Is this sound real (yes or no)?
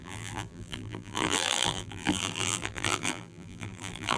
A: no